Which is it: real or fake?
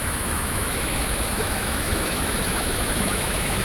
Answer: fake